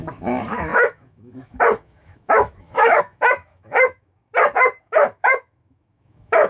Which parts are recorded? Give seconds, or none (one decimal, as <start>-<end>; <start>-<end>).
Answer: 4.3-4.8